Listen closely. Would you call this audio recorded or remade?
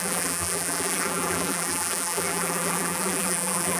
remade